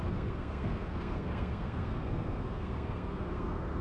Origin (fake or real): fake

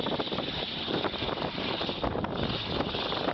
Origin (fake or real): fake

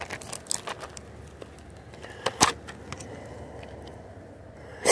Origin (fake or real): real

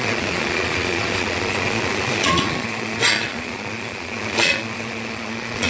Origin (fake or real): fake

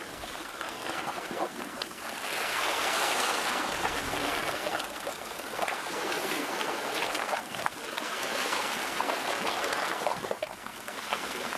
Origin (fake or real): fake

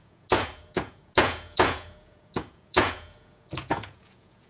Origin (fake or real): fake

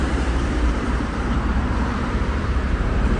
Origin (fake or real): fake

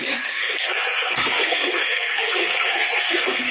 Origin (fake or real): fake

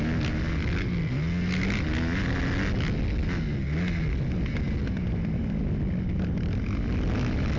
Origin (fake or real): real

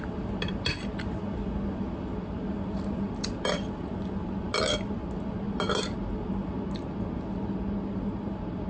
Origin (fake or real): real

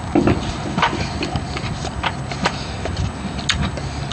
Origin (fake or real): real